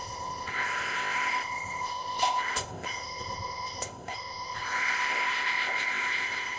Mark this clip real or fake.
fake